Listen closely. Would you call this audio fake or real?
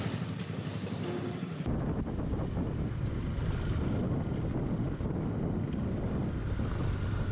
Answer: real